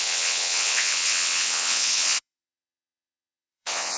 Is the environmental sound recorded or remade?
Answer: remade